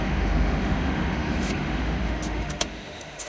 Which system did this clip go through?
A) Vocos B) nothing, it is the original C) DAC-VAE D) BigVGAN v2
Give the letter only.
C